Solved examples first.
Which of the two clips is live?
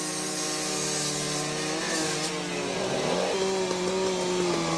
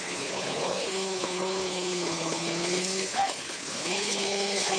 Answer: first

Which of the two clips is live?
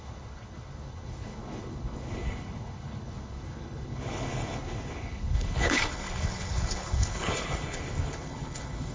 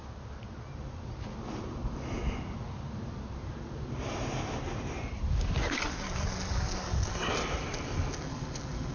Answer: second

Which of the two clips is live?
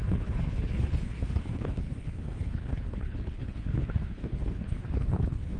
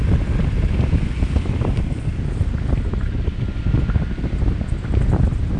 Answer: second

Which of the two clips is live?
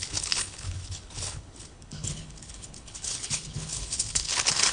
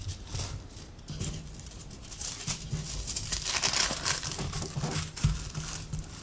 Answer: second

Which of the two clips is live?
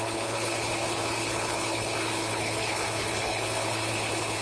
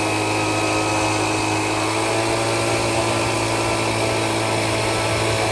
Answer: second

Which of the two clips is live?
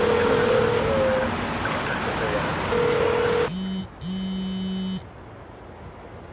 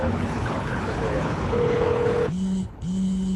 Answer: first